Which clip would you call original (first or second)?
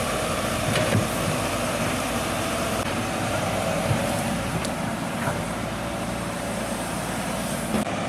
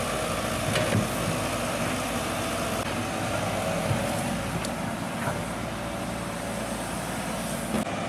second